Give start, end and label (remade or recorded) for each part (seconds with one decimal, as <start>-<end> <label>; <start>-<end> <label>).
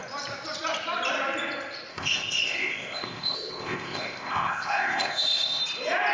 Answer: 0.0-1.9 recorded; 1.9-5.6 remade; 5.6-6.1 recorded